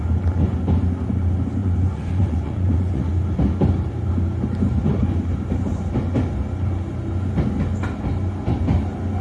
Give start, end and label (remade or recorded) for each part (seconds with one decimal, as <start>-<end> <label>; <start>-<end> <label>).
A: 0.0-1.6 recorded; 1.6-3.1 remade; 3.1-9.2 recorded